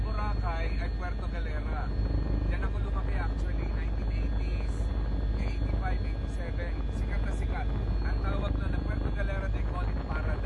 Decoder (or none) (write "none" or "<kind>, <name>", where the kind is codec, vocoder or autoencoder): none